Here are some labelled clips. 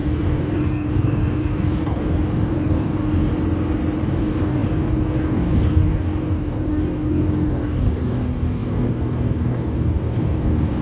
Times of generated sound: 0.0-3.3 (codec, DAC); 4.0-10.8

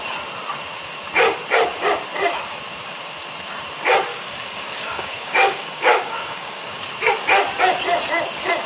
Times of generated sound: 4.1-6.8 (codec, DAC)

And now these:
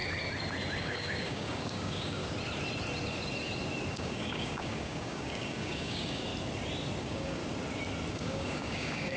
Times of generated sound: 0.8-2.2 (codec, DAC); 3.9-6.3; 7.0-7.4; 8.1-9.2